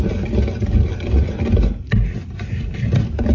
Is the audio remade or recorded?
recorded